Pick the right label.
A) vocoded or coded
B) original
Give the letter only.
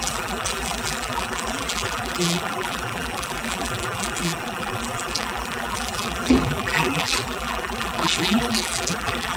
A